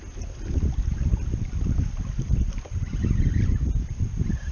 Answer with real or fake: real